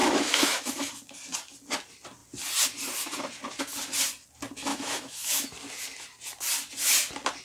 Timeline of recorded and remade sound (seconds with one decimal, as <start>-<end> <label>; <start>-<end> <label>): 0.0-0.9 remade; 0.9-4.7 recorded; 4.7-5.4 remade; 5.4-7.4 recorded